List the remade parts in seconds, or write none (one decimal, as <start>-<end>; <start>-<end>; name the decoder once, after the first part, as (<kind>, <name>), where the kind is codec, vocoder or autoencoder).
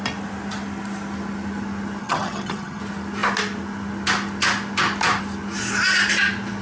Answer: 2.0-2.8 (vocoder, HiFi-GAN)